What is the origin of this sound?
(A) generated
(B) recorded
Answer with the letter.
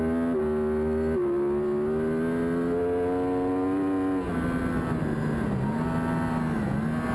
B